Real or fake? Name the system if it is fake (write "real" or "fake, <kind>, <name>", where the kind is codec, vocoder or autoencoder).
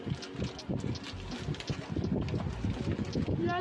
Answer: real